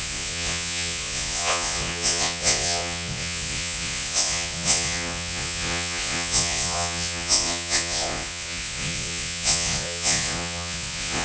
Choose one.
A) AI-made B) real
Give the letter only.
A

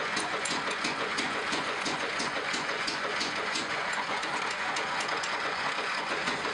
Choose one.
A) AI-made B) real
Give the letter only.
A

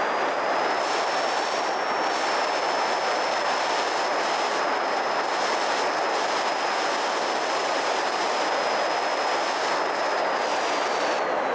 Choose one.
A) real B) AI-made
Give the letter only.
A